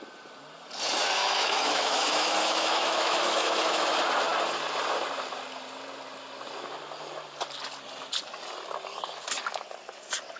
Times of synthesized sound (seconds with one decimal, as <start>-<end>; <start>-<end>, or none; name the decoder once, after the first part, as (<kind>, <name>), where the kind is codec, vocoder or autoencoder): 1.0-3.9 (autoencoder, DAC-VAE)